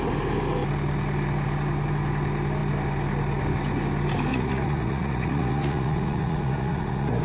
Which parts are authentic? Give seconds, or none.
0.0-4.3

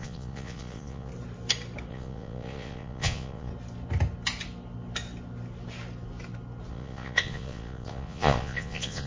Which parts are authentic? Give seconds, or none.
1.1-1.9; 3.5-6.7

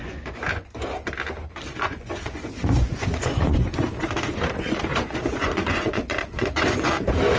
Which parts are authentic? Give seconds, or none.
0.5-1.7; 3.9-4.9; 6.9-7.4